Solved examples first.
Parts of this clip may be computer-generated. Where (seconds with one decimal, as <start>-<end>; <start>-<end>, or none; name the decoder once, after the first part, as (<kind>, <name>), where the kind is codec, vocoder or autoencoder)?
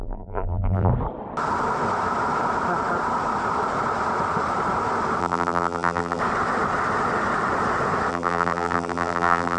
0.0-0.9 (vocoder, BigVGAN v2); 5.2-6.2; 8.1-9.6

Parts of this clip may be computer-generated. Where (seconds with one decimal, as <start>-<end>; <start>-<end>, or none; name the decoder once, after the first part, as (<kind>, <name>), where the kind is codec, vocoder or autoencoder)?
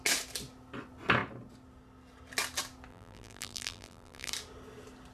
2.9-4.3 (vocoder, BigVGAN v2)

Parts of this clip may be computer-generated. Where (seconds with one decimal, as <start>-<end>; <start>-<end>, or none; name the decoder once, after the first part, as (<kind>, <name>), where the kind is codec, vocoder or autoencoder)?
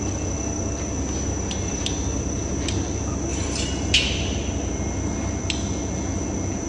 none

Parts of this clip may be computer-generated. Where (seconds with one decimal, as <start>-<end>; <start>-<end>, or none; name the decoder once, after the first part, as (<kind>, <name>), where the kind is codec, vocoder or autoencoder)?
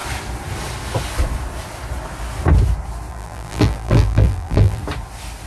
3.1-4.8 (vocoder, BigVGAN v2)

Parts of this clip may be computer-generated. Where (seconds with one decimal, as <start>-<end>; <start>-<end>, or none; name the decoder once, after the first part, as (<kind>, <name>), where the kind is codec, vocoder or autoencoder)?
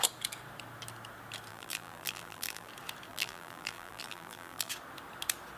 1.5-2.7 (vocoder, BigVGAN v2); 3.1-4.7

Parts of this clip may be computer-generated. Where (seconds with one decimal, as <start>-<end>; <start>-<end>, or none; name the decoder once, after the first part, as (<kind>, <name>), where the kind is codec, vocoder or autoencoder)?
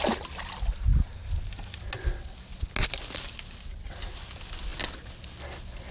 none